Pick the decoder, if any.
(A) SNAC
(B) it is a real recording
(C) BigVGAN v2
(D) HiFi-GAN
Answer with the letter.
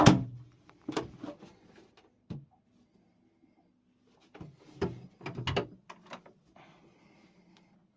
B